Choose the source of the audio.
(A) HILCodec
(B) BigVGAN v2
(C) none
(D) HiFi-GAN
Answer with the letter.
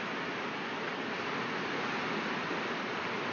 C